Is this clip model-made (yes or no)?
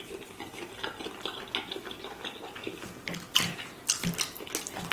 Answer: no